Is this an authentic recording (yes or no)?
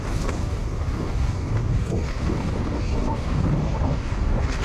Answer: no